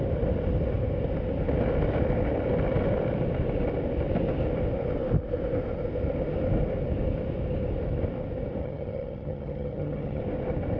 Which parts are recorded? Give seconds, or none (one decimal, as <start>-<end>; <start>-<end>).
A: 0.0-8.6; 10.2-10.8